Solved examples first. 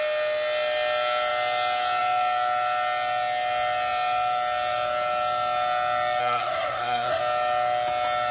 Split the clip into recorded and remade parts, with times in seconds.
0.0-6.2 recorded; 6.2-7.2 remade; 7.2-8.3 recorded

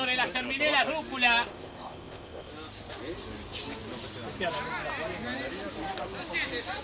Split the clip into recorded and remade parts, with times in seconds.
0.0-1.5 recorded; 1.5-2.5 remade; 2.5-6.8 recorded

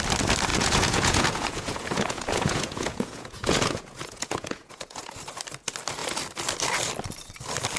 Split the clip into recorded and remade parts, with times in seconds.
0.0-0.5 recorded; 0.5-5.1 remade; 5.1-7.8 recorded

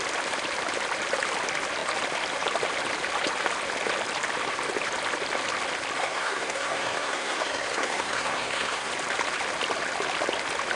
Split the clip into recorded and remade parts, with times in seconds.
0.0-6.0 recorded; 6.0-8.9 remade; 8.9-10.8 recorded

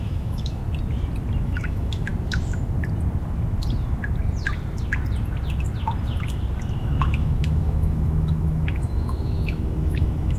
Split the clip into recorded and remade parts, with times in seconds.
0.0-0.6 remade; 0.6-1.4 recorded; 1.4-2.1 remade; 2.1-6.8 recorded; 6.8-10.4 remade

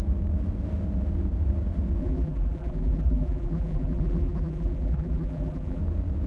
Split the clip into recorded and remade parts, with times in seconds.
0.0-2.0 recorded; 2.0-5.8 remade; 5.8-6.3 recorded